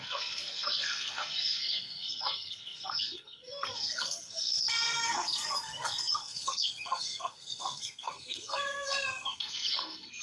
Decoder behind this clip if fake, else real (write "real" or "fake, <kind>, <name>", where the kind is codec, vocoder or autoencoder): fake, codec, SNAC